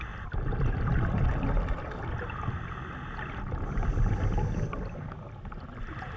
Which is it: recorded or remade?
recorded